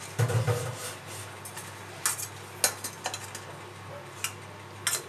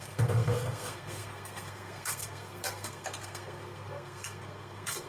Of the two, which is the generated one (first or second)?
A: second